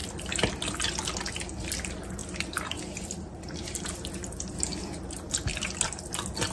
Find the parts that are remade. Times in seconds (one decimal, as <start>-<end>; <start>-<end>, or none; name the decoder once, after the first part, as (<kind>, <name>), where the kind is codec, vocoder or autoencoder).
0.0-0.5 (vocoder, BigVGAN v2)